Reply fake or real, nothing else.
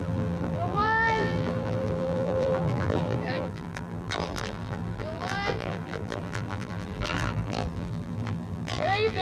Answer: fake